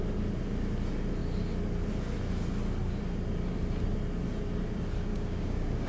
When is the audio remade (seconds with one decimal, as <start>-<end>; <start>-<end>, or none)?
5.1-5.9